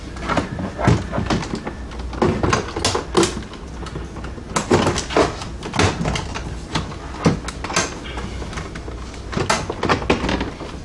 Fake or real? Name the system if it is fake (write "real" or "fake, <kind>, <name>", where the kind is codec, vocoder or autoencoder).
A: real